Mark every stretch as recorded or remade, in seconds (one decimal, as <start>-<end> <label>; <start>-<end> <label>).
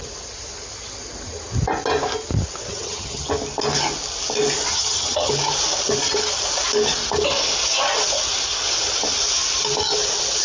0.0-2.7 recorded; 2.7-3.3 remade; 3.3-4.7 recorded; 4.7-5.3 remade; 5.3-10.4 recorded